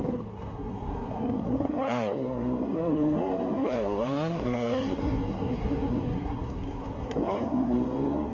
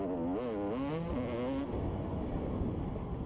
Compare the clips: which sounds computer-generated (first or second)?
first